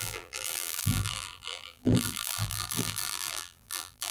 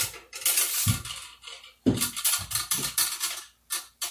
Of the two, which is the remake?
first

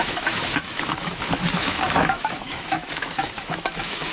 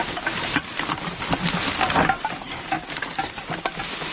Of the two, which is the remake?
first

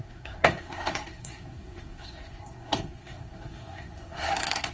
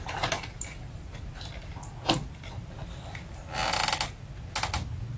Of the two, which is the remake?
first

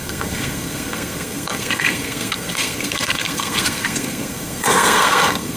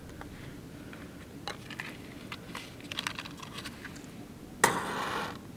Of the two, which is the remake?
first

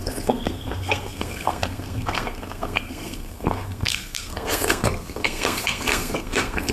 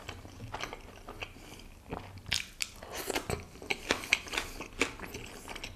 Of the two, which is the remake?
first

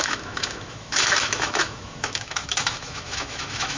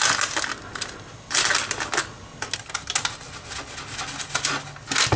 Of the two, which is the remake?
first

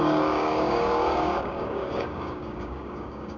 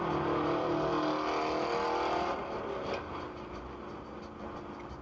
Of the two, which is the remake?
first